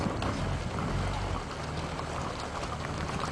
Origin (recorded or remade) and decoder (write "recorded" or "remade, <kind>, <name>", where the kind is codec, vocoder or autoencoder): recorded